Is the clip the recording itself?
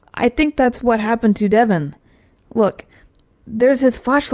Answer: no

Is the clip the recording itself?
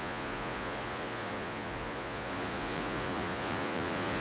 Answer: no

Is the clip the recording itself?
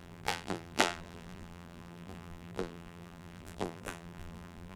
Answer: no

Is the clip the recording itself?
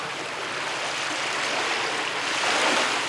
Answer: yes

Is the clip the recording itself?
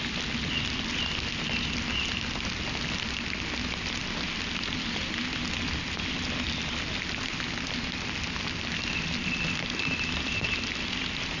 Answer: yes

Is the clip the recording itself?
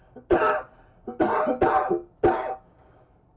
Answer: yes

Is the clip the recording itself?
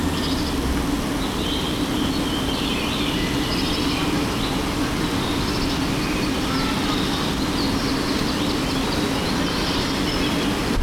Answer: yes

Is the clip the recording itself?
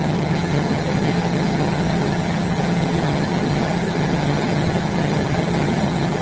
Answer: no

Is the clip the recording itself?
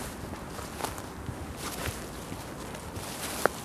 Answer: yes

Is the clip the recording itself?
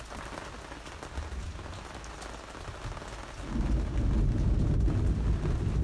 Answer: yes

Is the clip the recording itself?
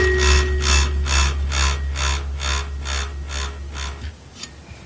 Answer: yes